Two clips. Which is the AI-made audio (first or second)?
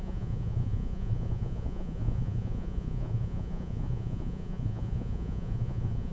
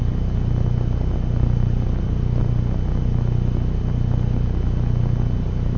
first